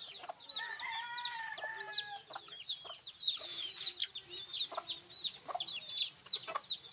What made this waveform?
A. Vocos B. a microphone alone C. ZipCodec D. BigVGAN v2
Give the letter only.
B